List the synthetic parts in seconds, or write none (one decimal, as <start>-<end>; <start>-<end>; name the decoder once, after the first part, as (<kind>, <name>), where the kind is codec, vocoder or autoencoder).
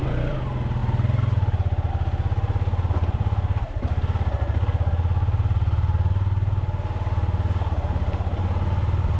none